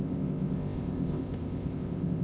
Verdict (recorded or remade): remade